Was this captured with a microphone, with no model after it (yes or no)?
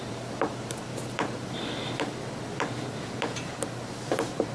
no